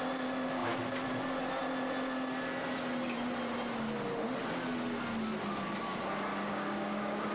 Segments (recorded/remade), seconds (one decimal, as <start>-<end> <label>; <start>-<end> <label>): 0.0-6.3 recorded; 6.3-7.3 remade